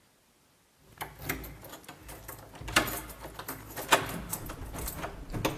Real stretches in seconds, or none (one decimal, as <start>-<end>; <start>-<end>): 0.0-5.6